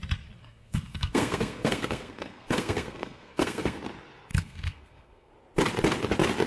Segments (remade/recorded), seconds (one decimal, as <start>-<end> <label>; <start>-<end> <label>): 0.0-0.4 recorded; 0.4-3.8 remade; 3.8-4.3 recorded; 4.3-5.3 remade; 5.3-6.5 recorded